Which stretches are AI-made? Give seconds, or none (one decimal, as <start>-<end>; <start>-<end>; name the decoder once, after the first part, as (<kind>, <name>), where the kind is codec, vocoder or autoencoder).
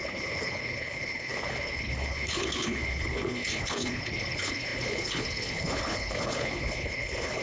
0.0-7.4 (codec, HILCodec)